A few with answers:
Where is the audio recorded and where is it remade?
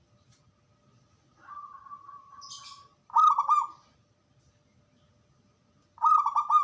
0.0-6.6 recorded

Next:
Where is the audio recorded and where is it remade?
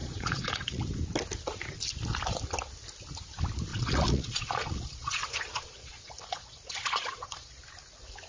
0.0-0.8 remade; 0.8-3.7 recorded; 3.7-7.6 remade; 7.6-8.3 recorded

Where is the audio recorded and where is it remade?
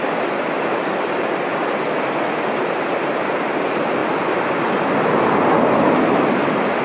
0.0-6.8 recorded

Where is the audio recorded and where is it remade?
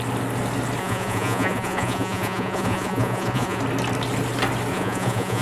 0.0-0.8 recorded; 0.8-3.6 remade; 3.6-4.7 recorded; 4.7-5.4 remade